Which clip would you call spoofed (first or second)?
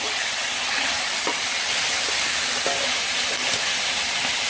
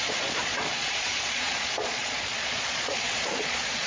second